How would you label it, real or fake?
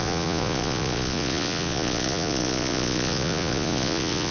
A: fake